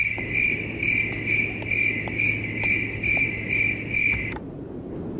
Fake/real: real